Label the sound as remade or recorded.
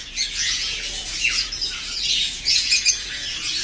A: remade